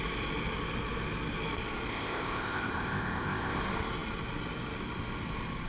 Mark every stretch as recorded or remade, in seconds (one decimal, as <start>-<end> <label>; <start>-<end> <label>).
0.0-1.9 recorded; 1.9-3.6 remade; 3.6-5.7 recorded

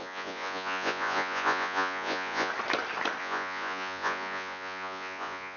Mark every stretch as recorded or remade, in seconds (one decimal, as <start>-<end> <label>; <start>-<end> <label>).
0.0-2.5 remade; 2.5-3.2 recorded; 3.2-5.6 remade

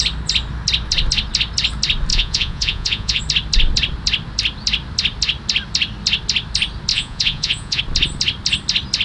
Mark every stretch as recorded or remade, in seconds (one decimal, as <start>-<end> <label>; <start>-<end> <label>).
0.0-2.1 recorded; 2.1-3.2 remade; 3.2-6.9 recorded; 6.9-7.8 remade; 7.8-9.0 recorded

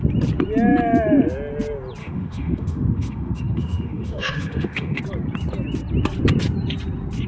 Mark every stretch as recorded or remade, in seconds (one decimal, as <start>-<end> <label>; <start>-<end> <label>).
0.0-2.0 recorded; 2.0-5.0 remade; 5.0-7.3 recorded

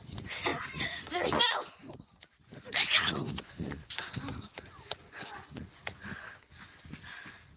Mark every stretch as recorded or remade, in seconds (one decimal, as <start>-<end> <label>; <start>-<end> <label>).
0.0-7.6 remade

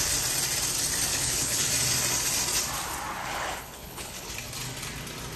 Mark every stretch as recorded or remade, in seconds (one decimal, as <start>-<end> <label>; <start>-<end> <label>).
0.0-1.1 recorded; 1.1-1.7 remade; 1.7-3.2 recorded; 3.2-4.3 remade; 4.3-5.4 recorded

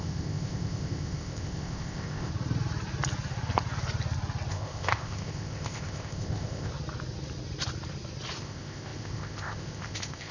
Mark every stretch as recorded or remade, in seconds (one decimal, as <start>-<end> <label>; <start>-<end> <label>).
0.0-2.3 remade; 2.3-4.5 recorded; 4.5-6.7 remade; 6.7-8.4 recorded; 8.4-10.3 remade

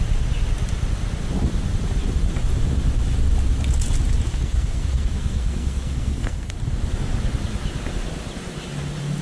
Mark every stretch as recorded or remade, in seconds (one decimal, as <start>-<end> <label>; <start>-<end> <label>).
0.0-4.3 recorded; 4.3-6.5 remade; 6.5-9.2 recorded